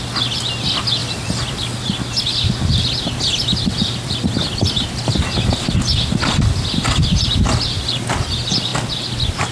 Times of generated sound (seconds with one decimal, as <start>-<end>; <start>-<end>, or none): none